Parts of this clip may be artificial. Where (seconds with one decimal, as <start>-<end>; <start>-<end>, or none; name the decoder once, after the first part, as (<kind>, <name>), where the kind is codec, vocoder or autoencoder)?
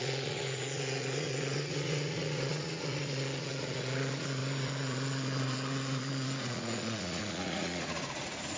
0.0-8.6 (vocoder, Vocos)